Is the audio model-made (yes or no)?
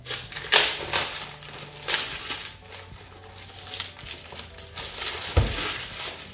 no